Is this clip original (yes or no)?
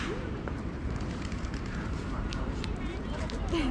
no